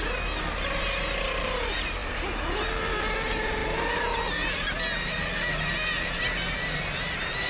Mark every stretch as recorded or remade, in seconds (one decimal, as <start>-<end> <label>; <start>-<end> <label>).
0.0-7.5 recorded